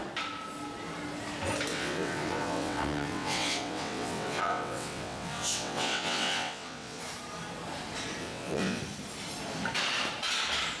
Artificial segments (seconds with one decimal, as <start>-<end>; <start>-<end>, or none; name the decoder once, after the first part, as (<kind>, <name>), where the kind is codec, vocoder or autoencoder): 1.7-7.0 (vocoder, WaveNeXt); 8.2-8.8